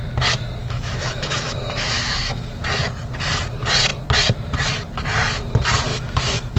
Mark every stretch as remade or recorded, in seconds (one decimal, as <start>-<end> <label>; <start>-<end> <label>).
0.0-0.6 recorded; 0.6-2.6 remade; 2.6-5.9 recorded; 5.9-6.6 remade